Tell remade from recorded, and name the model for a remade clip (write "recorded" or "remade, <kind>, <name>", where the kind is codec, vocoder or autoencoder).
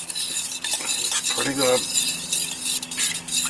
recorded